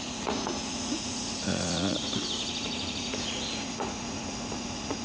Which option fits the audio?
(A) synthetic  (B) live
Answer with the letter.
A